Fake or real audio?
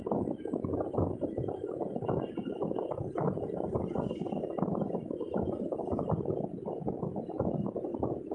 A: real